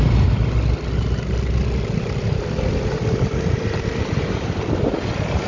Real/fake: real